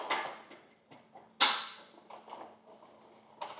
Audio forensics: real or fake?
real